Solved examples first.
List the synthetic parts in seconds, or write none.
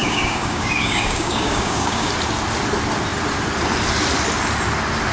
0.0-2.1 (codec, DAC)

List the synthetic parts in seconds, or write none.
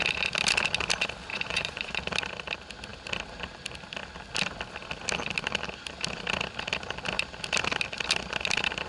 1.3-2.0 (vocoder, Vocos)